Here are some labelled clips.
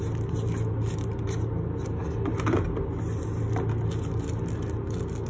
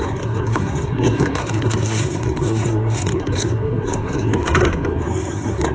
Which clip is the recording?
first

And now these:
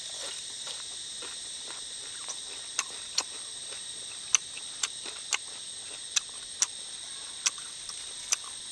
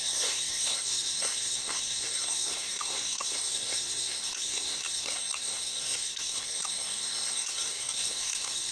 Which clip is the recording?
first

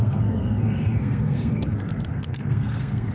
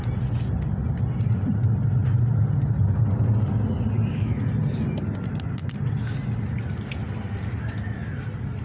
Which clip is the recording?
second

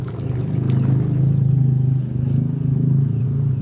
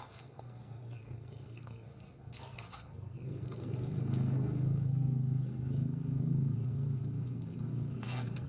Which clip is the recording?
first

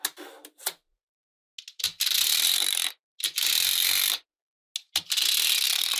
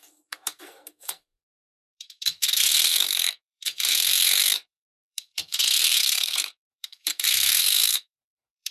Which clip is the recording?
first